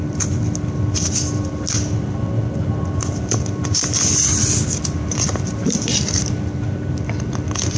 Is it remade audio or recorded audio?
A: remade